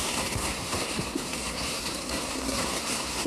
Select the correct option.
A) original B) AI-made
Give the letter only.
B